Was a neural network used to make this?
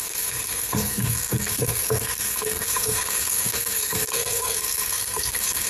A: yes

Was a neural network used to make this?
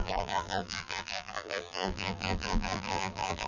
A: yes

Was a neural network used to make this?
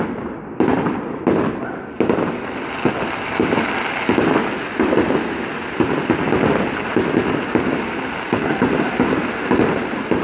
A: no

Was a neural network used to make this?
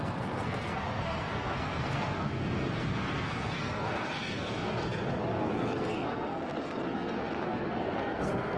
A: yes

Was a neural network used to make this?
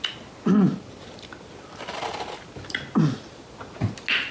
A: no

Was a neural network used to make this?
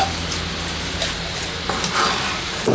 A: no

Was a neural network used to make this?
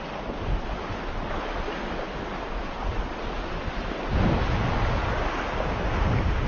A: no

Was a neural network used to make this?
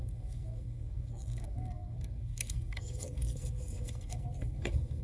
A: yes